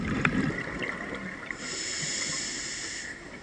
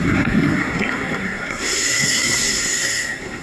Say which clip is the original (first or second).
first